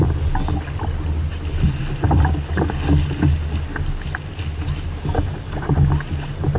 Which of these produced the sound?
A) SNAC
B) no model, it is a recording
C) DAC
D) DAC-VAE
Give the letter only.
B